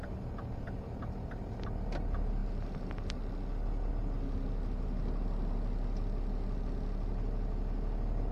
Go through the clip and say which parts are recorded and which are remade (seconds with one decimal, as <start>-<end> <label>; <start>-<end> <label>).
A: 0.0-8.3 recorded